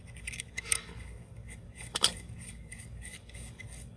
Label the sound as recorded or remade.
remade